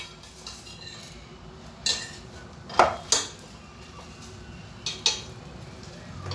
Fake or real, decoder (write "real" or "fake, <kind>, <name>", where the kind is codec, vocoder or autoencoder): real